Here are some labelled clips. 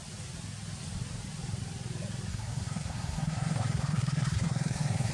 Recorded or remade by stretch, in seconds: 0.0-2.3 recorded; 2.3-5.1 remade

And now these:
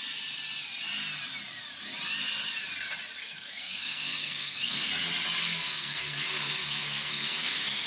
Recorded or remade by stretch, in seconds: 0.0-3.2 recorded; 3.2-4.9 remade; 4.9-5.4 recorded; 5.4-7.9 remade

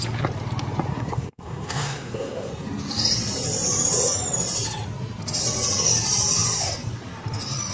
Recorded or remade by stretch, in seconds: 0.0-0.9 recorded; 0.9-2.5 remade; 2.5-7.7 recorded

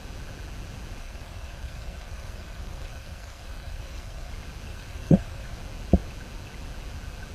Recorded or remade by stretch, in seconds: 0.0-1.0 recorded; 1.0-4.3 remade; 4.3-4.7 recorded; 4.7-5.6 remade; 5.6-7.3 recorded

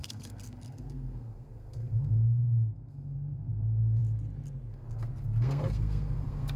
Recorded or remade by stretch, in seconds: 0.0-4.0 remade; 4.0-4.7 recorded; 4.7-6.6 remade

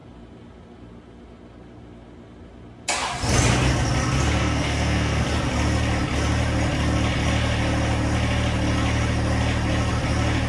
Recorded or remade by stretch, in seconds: 0.0-4.4 recorded; 4.4-5.3 remade; 5.3-10.5 recorded